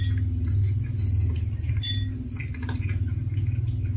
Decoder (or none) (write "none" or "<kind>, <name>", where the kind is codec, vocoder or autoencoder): none